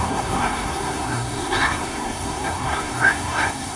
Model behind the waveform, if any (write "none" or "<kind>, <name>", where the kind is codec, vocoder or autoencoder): codec, SNAC